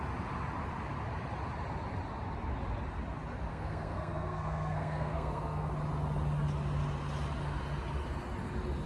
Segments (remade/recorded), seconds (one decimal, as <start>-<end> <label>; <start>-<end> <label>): 0.0-3.5 recorded; 3.5-5.7 remade; 5.7-8.9 recorded